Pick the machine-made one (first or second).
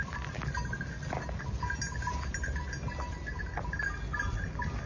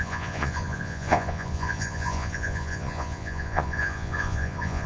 second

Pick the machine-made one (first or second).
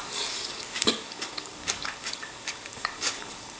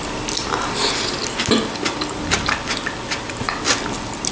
first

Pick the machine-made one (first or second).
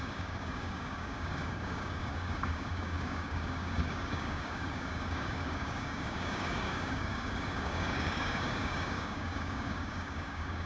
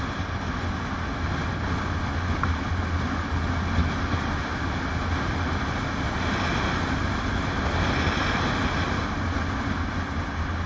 first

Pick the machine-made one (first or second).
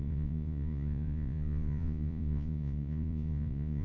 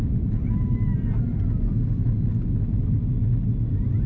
first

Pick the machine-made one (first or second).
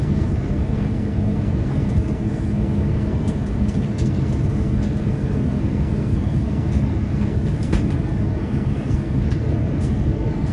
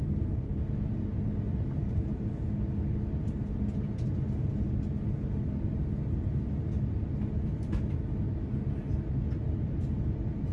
first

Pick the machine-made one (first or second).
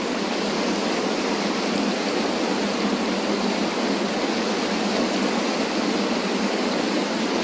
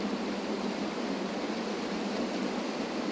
second